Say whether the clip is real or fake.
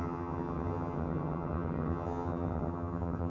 fake